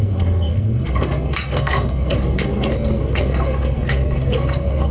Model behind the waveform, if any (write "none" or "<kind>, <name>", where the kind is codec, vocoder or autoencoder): codec, SNAC